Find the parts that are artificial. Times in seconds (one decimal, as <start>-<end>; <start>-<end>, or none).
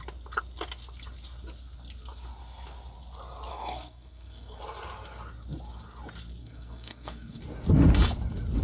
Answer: 3.5-4.6; 6.4-7.4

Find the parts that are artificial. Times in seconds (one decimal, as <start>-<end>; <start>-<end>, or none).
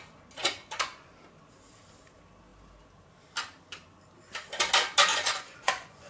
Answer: 0.4-1.1; 5.1-6.1